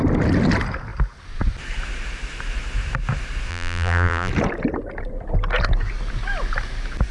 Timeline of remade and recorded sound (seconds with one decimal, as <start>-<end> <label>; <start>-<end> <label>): 0.0-3.5 recorded; 3.5-4.3 remade; 4.3-7.1 recorded